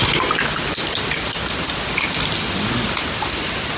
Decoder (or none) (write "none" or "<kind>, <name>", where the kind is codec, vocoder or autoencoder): none